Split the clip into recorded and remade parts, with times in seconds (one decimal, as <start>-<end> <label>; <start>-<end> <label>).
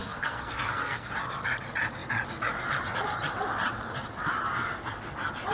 0.0-1.1 remade; 1.1-5.5 recorded